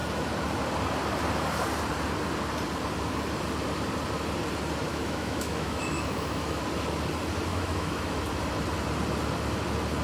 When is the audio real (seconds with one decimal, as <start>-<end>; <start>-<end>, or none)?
0.0-4.9; 6.6-7.5; 8.2-10.0

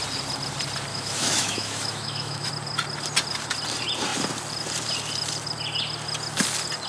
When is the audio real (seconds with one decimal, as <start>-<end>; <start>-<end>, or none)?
0.0-0.9; 2.5-6.9

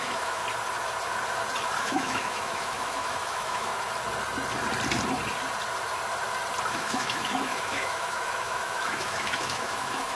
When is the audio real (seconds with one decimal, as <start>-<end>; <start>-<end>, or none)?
0.4-1.8; 3.7-6.7

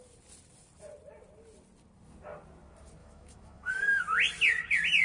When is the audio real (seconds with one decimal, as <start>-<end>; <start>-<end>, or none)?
0.0-3.0; 4.0-5.0

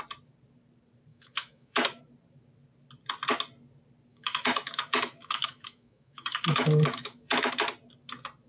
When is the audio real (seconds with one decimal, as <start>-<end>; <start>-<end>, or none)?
0.0-1.1; 2.0-4.1; 7.5-8.5

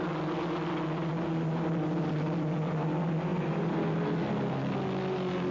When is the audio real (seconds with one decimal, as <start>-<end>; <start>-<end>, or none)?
0.0-5.5

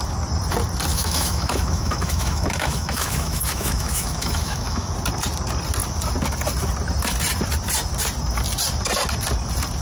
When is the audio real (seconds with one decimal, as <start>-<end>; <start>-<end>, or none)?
0.0-0.9; 4.9-9.8